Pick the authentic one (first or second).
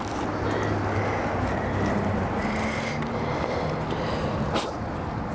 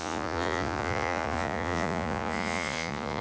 first